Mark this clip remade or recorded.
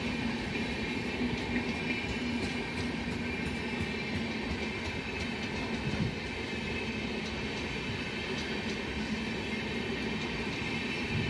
recorded